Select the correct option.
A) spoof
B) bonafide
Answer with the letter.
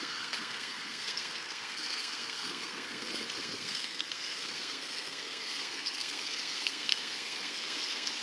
A